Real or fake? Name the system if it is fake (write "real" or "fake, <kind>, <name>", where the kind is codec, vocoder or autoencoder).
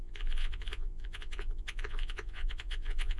fake, vocoder, Vocos